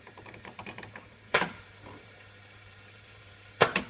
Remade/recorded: remade